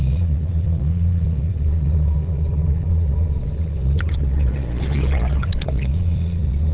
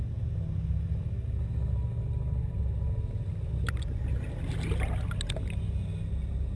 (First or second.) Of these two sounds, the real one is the second